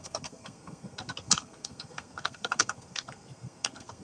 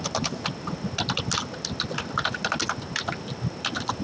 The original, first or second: second